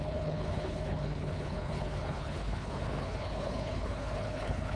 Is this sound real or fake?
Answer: fake